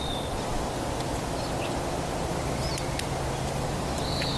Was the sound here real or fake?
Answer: real